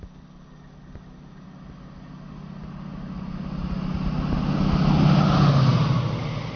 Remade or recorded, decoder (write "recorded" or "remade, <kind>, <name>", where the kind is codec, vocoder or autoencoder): recorded